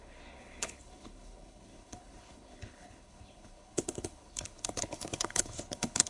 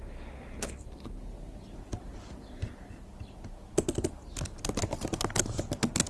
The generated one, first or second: first